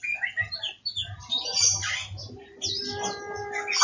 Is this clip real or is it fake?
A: real